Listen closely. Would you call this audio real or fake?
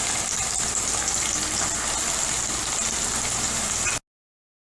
real